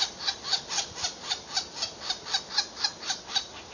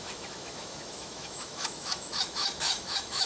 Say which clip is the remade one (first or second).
second